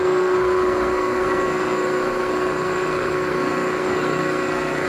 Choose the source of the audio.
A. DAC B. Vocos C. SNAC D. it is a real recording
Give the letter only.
C